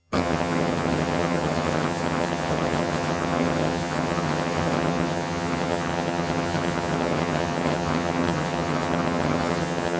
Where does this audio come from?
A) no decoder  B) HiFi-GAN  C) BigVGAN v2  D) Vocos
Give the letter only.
B